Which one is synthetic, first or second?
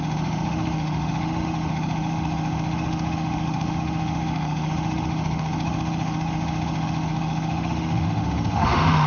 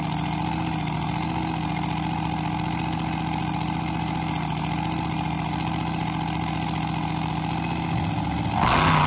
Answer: first